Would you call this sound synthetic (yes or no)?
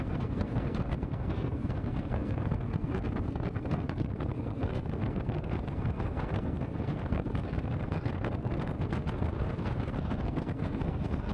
yes